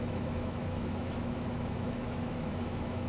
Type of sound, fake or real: fake